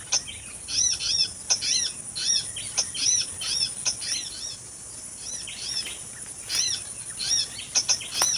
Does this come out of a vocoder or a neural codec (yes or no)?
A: no